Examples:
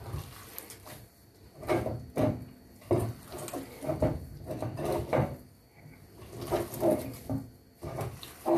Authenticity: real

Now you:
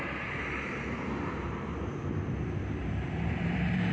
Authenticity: fake